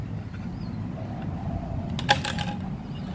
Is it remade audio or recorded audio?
recorded